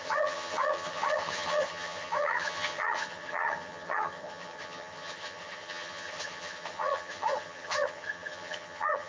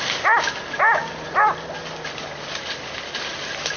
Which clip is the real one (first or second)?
second